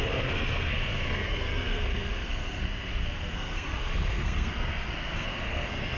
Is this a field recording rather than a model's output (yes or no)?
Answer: no